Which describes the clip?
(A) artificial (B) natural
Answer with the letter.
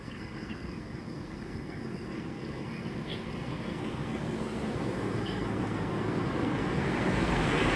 A